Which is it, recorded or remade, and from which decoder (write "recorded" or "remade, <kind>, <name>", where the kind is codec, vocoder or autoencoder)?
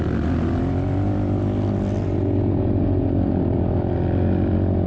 recorded